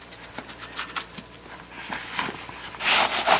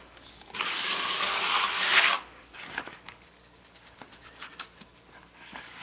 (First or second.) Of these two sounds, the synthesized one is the second